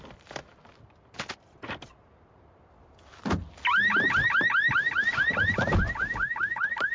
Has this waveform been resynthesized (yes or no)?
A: no